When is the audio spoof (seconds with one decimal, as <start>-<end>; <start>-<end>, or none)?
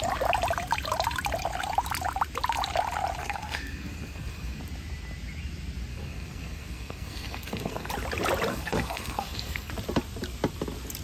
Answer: 3.2-4.6; 5.9-7.9; 8.5-9.7